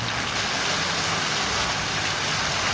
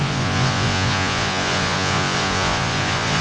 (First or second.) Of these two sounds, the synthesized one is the second